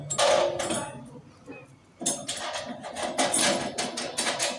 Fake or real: real